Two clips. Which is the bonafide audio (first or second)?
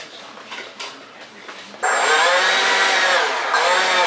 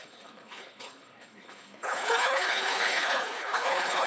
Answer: first